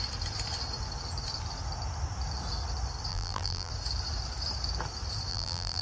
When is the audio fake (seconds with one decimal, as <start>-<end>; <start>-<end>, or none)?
3.1-3.7; 5.3-5.8